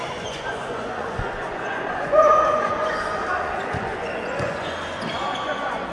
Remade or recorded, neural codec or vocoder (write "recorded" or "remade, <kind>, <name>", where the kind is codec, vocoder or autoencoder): remade, vocoder, Vocos